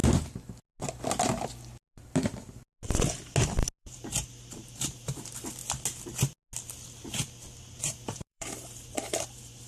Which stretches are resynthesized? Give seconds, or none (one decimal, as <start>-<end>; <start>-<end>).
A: 3.8-5.6; 7.8-9.7